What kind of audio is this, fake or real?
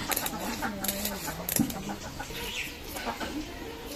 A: real